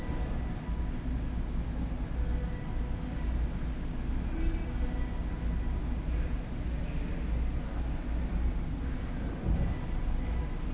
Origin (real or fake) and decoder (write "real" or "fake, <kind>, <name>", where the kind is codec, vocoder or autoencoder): real